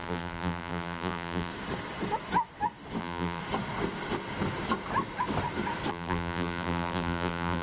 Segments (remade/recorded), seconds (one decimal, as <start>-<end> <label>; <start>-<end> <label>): 0.0-1.5 remade; 1.5-3.0 recorded; 3.0-3.4 remade; 3.4-5.9 recorded; 5.9-7.6 remade